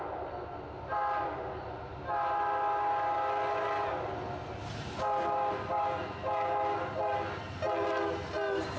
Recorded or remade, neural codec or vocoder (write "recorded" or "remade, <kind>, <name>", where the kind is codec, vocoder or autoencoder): recorded